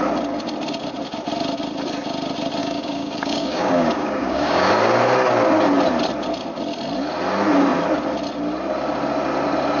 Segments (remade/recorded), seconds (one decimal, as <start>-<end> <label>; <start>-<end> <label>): 0.0-2.6 recorded; 2.6-4.7 remade; 4.7-9.8 recorded